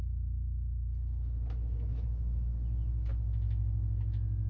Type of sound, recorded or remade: recorded